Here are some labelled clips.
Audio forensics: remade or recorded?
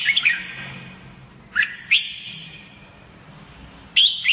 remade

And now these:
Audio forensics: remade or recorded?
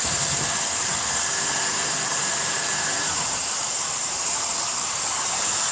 remade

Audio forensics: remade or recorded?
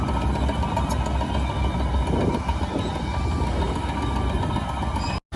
recorded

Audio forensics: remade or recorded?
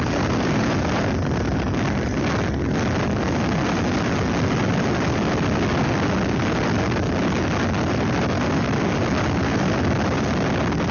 recorded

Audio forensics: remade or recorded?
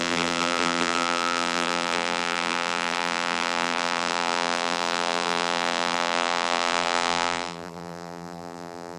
remade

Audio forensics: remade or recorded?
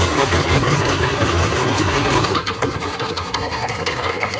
remade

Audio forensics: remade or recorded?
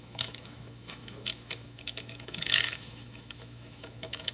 remade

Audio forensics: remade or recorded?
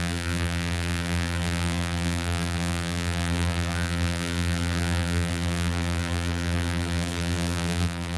remade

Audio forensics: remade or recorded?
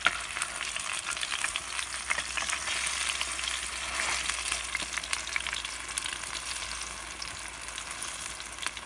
recorded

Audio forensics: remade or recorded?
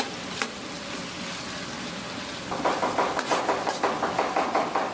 recorded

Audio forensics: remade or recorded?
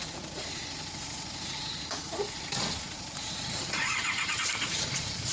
remade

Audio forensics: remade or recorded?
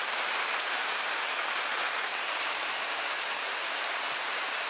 remade